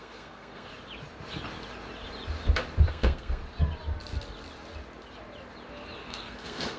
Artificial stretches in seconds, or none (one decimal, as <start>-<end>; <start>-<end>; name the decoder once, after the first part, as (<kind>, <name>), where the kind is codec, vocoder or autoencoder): 0.0-0.7 (codec, SNAC); 2.9-3.4; 6.1-6.8

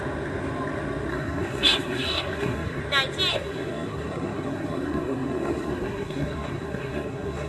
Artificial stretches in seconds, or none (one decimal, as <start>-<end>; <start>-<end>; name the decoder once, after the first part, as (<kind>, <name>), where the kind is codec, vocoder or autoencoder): 1.1-2.8 (codec, SNAC); 3.3-7.5